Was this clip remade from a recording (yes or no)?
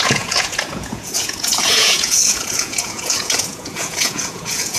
yes